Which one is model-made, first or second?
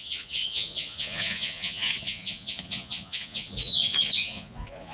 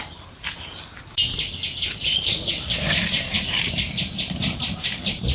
first